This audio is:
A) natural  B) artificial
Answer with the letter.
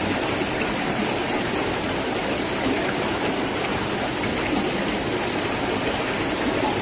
A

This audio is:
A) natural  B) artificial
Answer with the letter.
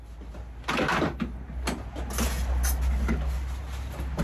A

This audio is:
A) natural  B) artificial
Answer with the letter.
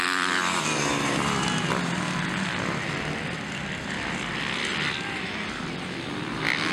A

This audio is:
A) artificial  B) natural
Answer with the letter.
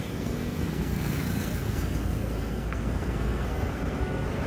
A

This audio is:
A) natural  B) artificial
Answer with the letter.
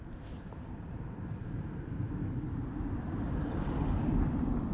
B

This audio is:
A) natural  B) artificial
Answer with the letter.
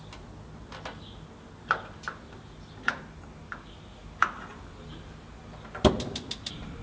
A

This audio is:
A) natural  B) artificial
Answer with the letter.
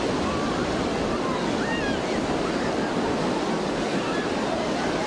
A